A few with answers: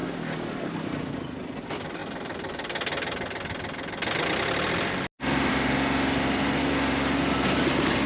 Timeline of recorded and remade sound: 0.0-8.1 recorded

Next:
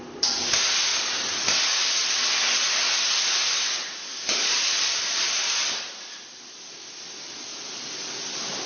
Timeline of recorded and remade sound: 0.0-2.8 remade; 2.8-3.8 recorded; 3.8-8.7 remade

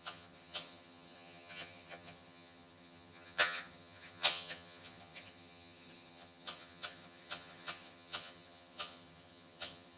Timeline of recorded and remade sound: 0.0-10.0 remade

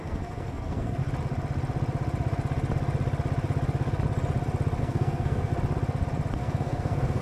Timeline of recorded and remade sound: 0.0-1.0 remade; 1.0-4.8 recorded; 4.8-5.5 remade; 5.5-6.3 recorded; 6.3-7.2 remade

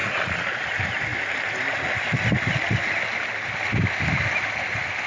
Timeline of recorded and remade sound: 0.0-0.6 remade; 0.6-5.1 recorded

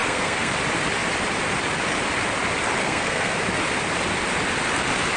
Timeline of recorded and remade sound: 0.0-0.5 remade; 0.5-2.8 recorded; 2.8-3.3 remade; 3.3-5.2 recorded

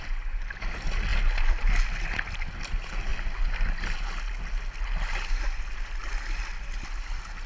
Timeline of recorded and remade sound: 0.0-7.5 recorded